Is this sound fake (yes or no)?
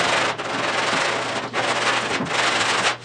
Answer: no